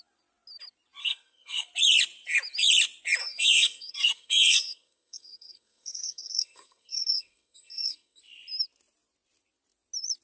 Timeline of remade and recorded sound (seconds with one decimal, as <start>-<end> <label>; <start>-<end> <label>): 0.0-1.0 recorded; 1.0-1.7 remade; 1.7-3.2 recorded; 3.2-8.2 remade; 8.2-10.2 recorded